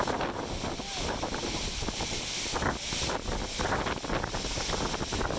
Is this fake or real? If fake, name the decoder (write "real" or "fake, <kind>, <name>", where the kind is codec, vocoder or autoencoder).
real